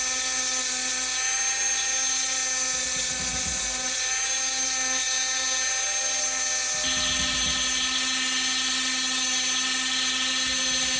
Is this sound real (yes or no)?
yes